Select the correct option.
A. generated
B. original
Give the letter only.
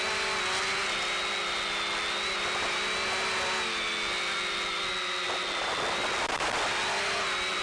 B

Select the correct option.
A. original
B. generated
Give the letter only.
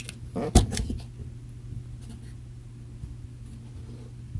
A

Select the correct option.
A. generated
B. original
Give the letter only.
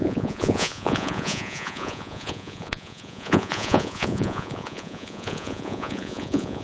A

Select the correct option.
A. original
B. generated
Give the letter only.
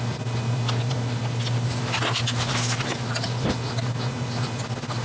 A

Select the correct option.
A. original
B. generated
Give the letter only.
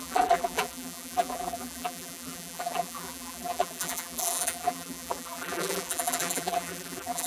B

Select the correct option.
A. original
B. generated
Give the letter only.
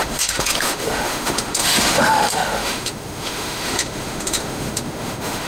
B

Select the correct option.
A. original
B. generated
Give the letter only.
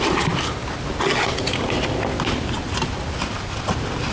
A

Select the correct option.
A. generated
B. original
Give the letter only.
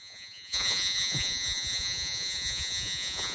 A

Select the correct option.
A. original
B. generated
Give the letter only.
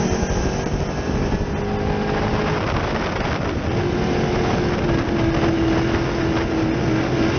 A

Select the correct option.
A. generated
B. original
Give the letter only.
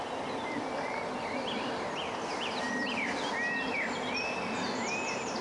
B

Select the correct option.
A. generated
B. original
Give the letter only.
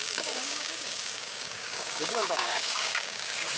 A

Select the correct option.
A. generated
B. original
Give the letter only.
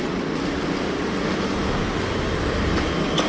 B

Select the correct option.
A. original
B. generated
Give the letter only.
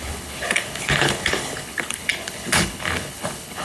B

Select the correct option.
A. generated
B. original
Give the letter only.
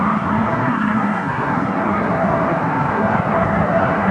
A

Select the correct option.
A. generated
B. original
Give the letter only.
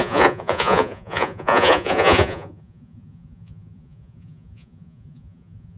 A